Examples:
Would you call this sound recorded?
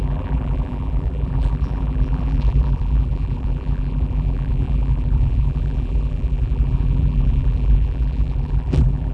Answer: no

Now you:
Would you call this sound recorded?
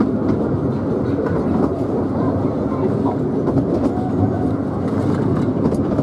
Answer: yes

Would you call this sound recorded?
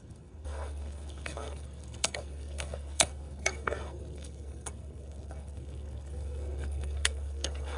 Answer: no